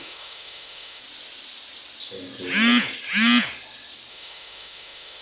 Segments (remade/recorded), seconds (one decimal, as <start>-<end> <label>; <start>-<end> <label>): 0.0-1.0 remade; 1.0-4.1 recorded; 4.1-5.2 remade